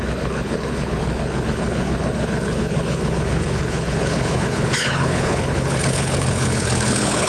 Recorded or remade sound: remade